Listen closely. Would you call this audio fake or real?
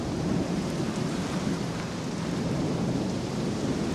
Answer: fake